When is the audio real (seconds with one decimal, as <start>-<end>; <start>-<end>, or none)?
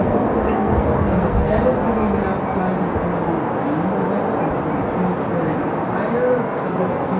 2.2-6.4